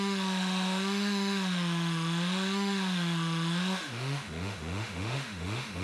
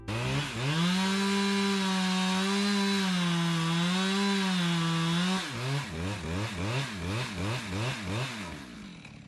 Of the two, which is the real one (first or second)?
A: second